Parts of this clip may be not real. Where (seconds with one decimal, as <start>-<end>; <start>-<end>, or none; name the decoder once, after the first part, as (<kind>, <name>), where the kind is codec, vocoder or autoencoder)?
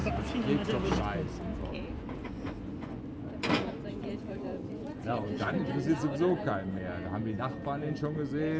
1.5-5.7 (vocoder, Vocos)